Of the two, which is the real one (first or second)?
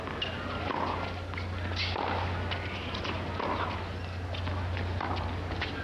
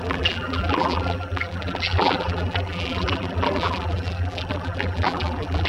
first